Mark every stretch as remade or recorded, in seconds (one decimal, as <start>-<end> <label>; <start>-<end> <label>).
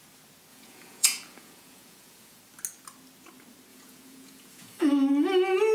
0.0-0.5 recorded; 0.5-2.4 remade; 2.4-3.7 recorded; 3.7-4.9 remade; 4.9-5.7 recorded